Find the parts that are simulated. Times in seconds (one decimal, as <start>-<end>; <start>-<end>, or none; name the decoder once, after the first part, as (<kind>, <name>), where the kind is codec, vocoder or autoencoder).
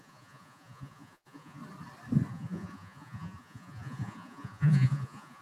0.0-1.6 (vocoder, Vocos); 2.3-5.4